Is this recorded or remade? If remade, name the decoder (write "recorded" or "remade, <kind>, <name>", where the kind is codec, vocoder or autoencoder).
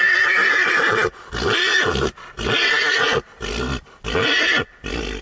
recorded